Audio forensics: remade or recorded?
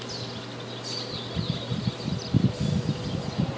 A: recorded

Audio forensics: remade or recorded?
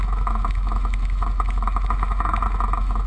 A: remade